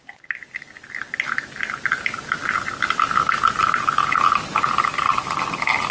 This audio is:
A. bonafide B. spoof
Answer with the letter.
A